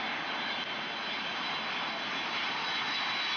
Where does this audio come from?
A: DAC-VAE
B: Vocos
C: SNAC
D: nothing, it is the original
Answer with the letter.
D